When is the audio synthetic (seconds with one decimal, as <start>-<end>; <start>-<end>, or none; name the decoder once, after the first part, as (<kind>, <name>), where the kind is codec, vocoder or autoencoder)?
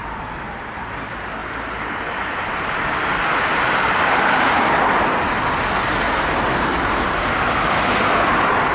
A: none